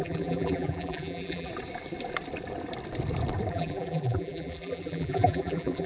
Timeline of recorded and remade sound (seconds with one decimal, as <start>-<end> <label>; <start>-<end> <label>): 0.0-1.5 remade; 1.5-3.5 recorded; 3.5-5.9 remade